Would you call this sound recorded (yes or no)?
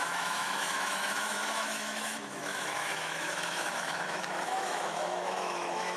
no